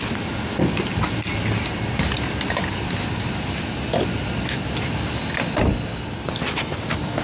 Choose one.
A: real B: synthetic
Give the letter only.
A